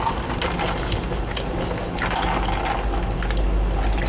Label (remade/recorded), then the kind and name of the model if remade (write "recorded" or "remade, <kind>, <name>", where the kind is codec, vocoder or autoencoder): recorded